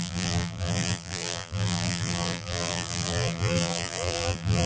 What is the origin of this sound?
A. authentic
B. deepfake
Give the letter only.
B